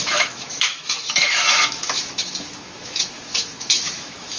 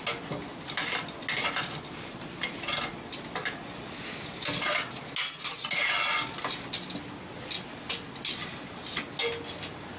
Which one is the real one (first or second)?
second